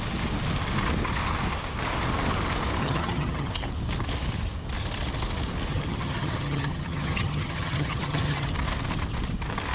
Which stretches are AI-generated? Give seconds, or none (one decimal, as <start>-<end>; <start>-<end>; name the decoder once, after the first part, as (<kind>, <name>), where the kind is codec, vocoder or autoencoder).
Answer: 2.8-3.5 (vocoder, HiFi-GAN); 5.7-8.5

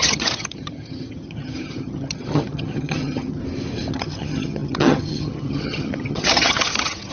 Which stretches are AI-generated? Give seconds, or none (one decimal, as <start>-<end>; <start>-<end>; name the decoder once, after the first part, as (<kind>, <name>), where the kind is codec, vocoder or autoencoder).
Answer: 0.0-3.4 (vocoder, HiFi-GAN); 3.9-7.1

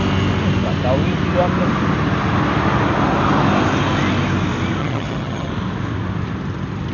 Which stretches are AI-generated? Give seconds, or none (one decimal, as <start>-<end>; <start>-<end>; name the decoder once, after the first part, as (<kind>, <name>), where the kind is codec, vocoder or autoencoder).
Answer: 4.8-5.5 (vocoder, HiFi-GAN)

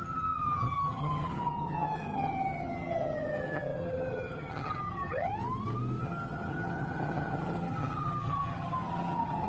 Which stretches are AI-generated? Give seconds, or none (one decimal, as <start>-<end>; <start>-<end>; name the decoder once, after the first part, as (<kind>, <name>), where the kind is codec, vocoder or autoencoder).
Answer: 0.0-5.3 (vocoder, HiFi-GAN); 6.0-9.5

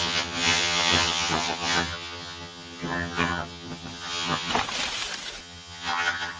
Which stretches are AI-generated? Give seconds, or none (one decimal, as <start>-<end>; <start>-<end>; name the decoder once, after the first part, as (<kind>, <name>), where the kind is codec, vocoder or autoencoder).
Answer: 0.0-4.5 (vocoder, HiFi-GAN); 5.4-6.4